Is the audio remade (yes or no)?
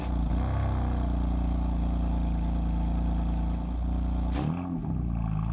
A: no